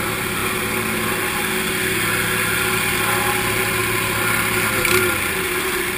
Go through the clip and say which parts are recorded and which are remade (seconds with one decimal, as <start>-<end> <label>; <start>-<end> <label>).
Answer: 0.0-6.0 recorded